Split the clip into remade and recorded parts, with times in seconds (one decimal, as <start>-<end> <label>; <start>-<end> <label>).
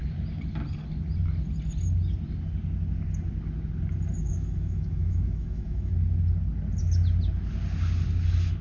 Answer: 0.0-4.2 recorded; 4.2-5.9 remade; 5.9-8.6 recorded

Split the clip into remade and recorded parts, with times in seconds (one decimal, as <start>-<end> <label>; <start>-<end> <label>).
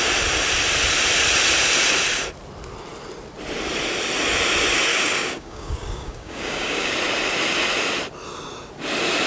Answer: 0.0-4.9 recorded; 4.9-6.9 remade; 6.9-9.3 recorded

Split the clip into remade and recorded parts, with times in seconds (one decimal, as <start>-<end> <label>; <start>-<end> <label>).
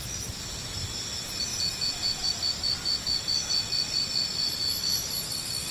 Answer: 0.0-1.5 recorded; 1.5-2.3 remade; 2.3-5.7 recorded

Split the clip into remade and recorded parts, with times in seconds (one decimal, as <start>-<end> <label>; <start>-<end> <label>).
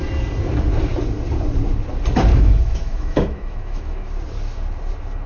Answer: 0.0-2.3 recorded; 2.3-4.1 remade; 4.1-5.3 recorded